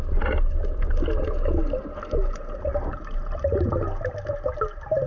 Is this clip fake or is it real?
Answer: real